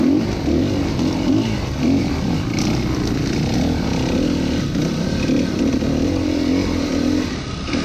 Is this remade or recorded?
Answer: recorded